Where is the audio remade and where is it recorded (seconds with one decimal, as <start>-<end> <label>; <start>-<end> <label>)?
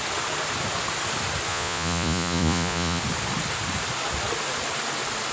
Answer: 0.0-1.5 recorded; 1.5-3.0 remade; 3.0-5.3 recorded